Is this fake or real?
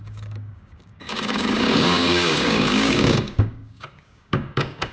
fake